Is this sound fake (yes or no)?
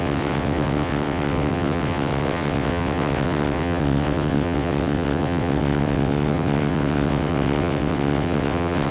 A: yes